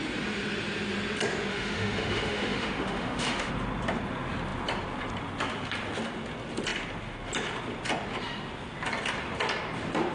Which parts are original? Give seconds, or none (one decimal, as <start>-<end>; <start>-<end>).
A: 0.0-1.5; 3.5-10.1